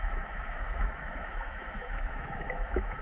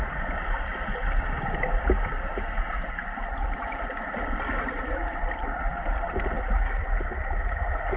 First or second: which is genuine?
second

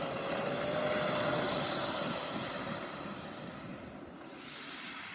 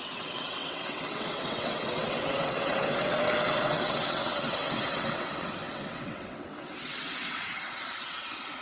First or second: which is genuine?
first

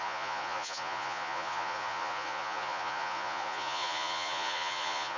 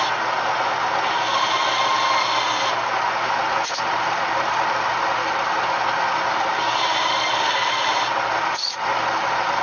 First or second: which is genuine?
second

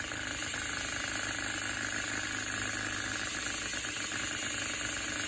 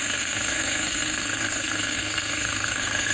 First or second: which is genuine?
first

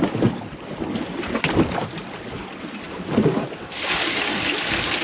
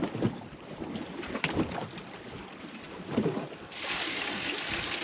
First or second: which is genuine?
first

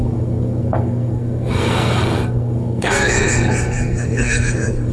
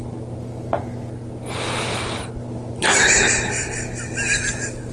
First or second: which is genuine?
second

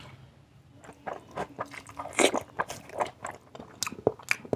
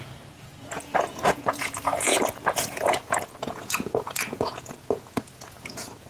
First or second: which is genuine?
first